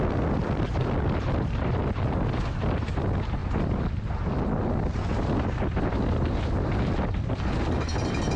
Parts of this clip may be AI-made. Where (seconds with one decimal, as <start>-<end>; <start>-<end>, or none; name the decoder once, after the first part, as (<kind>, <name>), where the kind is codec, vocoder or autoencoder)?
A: none